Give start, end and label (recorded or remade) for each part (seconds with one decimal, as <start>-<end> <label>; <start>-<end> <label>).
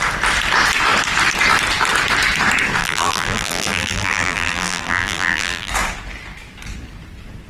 0.0-2.8 recorded; 2.8-5.7 remade; 5.7-7.5 recorded